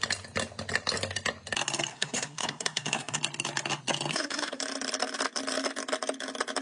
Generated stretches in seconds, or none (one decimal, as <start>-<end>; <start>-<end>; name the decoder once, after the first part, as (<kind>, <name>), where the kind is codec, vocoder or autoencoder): 1.9-3.2 (codec, SNAC); 4.1-4.6